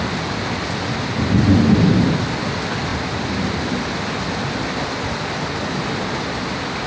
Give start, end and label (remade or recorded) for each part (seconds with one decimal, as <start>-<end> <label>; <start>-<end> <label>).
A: 0.0-6.9 recorded